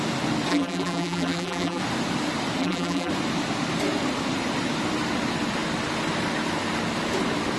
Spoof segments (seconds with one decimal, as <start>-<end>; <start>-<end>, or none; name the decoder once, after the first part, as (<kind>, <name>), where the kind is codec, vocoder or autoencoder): 0.5-1.8 (vocoder, BigVGAN v2); 2.6-3.1